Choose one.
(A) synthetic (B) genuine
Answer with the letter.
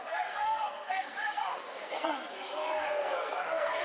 A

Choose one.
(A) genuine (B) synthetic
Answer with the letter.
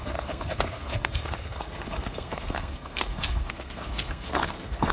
B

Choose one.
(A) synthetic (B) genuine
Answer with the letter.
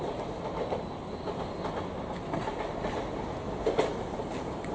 B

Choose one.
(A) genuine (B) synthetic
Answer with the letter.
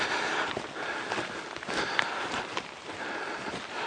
A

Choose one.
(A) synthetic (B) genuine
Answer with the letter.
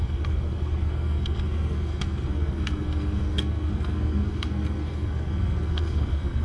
A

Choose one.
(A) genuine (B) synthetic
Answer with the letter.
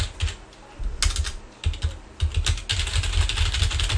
A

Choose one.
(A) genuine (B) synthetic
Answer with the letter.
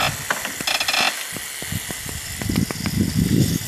A